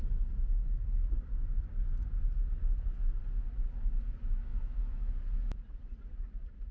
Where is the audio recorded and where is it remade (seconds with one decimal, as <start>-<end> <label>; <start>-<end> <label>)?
0.0-4.5 recorded; 4.5-5.1 remade; 5.1-6.7 recorded